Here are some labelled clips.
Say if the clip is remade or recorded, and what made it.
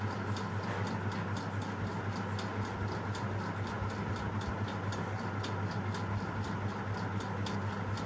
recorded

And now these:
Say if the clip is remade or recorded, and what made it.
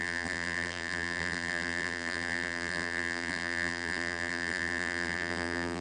remade, vocoder, BigVGAN v2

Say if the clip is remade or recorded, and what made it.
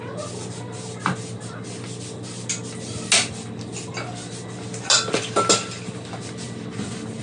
recorded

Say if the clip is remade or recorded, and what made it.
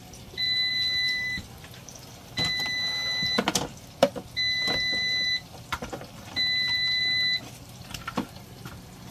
remade, vocoder, BigVGAN v2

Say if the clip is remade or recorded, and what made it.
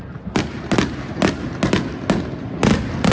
recorded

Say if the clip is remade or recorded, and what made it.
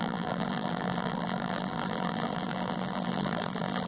remade, vocoder, BigVGAN v2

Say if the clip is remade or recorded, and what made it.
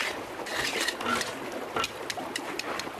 recorded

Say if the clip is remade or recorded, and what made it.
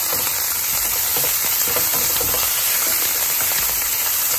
remade, vocoder, BigVGAN v2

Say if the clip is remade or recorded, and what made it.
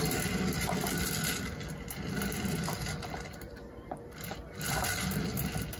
remade, vocoder, BigVGAN v2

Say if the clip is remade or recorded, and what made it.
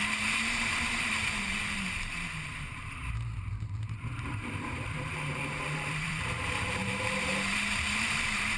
remade, vocoder, BigVGAN v2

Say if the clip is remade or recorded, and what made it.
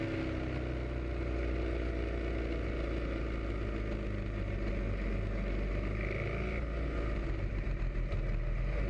recorded